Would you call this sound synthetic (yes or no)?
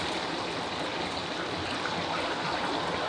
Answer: no